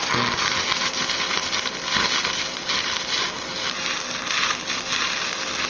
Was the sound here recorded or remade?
recorded